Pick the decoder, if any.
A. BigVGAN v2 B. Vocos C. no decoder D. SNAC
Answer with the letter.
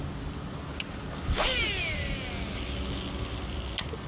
C